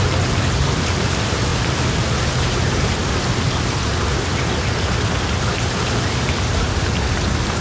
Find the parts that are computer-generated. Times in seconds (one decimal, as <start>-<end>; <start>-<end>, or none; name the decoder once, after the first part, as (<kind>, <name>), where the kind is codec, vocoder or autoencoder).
none